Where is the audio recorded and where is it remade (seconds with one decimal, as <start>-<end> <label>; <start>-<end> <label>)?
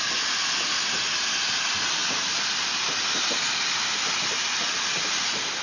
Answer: 0.0-5.6 recorded